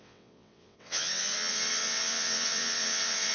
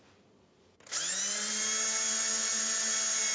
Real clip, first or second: second